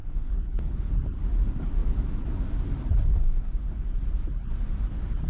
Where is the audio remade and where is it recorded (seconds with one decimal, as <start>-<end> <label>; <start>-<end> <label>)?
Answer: 0.0-0.9 remade; 0.9-5.3 recorded